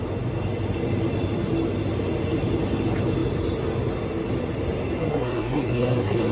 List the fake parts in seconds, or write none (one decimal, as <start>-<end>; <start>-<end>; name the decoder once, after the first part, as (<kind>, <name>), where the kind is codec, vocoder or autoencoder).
5.0-6.3 (codec, SNAC)